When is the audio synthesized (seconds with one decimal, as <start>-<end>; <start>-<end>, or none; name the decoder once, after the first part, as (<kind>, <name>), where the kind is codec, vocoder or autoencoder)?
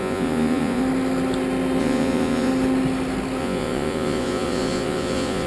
0.0-0.8 (vocoder, Vocos); 1.8-2.5; 3.4-5.5